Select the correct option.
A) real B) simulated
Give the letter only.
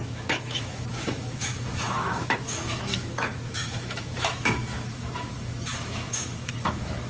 B